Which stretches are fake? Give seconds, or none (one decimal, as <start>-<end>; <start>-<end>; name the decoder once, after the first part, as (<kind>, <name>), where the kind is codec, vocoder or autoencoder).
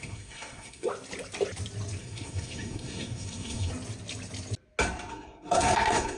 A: 0.0-0.9 (codec, SNAC); 2.0-3.7; 5.1-6.2